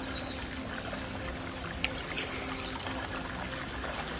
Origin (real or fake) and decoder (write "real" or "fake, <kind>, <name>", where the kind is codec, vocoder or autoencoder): real